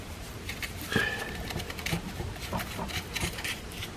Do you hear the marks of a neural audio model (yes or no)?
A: yes